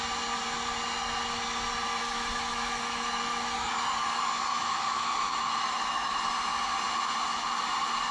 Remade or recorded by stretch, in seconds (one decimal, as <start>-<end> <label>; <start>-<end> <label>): 0.0-2.0 recorded; 2.0-3.7 remade; 3.7-4.5 recorded; 4.5-6.2 remade; 6.2-8.1 recorded